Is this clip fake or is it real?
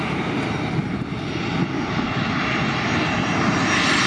real